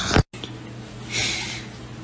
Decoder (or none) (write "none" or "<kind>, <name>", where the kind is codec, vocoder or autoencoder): none